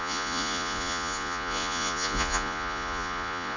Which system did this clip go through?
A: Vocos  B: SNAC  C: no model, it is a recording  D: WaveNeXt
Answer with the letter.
A